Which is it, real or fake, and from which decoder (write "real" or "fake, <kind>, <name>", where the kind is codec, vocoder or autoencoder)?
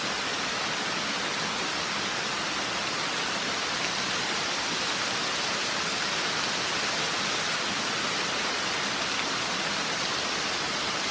real